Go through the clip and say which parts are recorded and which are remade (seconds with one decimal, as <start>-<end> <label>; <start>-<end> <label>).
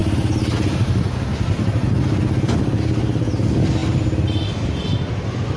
0.0-5.6 recorded